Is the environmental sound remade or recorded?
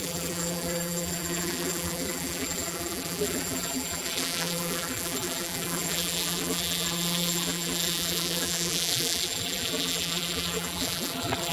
remade